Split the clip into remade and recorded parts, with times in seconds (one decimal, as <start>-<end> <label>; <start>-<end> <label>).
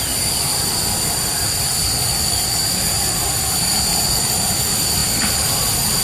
0.0-6.0 recorded